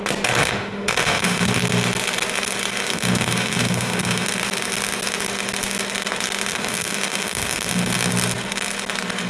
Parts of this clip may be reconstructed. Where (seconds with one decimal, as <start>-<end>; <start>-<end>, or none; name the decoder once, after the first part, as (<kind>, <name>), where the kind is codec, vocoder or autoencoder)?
0.4-1.6 (autoencoder, DAC-VAE); 2.8-4.3; 6.5-8.1